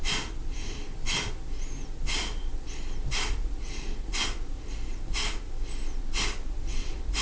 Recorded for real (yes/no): yes